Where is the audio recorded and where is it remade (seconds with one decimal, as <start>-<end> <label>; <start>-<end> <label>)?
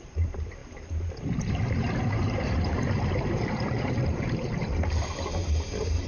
0.0-0.6 remade; 0.6-1.7 recorded; 1.7-6.1 remade